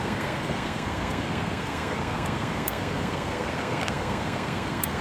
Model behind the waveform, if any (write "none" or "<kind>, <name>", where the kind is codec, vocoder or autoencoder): codec, SNAC